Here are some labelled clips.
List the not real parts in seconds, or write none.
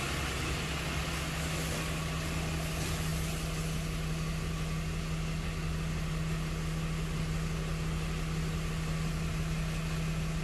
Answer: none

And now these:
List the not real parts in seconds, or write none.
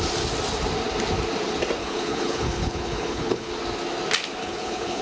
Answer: 1.8-3.5 (codec, HILCodec); 4.4-5.0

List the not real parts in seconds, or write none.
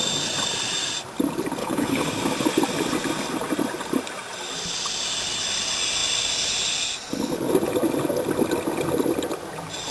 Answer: 1.6-2.1 (codec, HILCodec)